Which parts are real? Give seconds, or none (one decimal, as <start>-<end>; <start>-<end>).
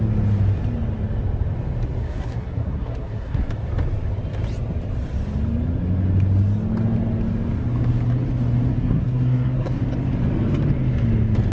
0.0-2.0; 3.5-8.7; 9.7-11.5